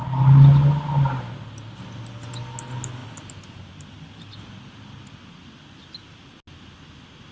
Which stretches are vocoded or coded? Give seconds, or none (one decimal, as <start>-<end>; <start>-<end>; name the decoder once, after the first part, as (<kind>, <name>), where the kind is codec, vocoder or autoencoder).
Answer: none